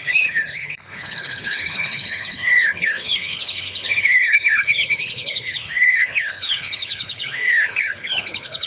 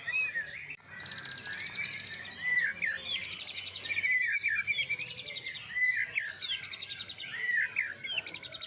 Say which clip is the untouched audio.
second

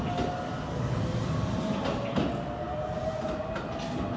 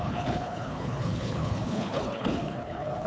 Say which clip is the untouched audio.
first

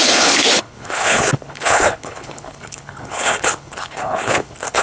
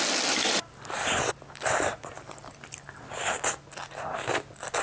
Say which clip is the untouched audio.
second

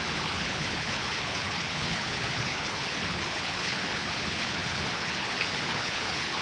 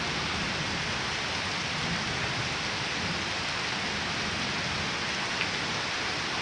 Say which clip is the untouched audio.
second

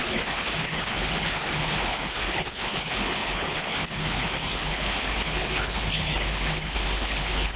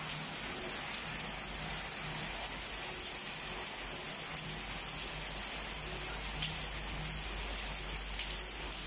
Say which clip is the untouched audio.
second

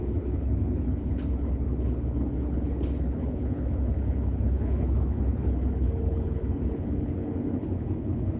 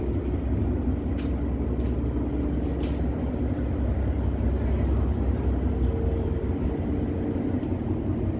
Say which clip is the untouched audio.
second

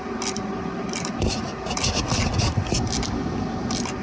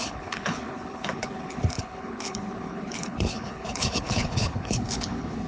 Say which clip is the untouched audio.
first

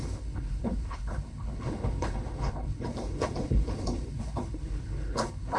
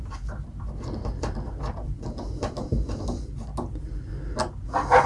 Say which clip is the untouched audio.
second